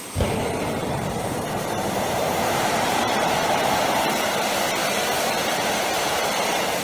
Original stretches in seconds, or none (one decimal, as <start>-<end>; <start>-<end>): 0.0-0.8; 3.7-6.8

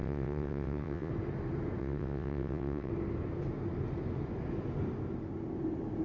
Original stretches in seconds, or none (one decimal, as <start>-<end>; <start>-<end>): 1.1-1.8; 2.9-6.0